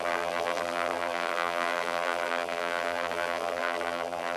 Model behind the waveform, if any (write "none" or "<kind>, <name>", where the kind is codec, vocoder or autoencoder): vocoder, BigVGAN v2